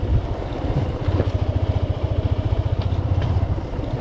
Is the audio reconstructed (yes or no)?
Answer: yes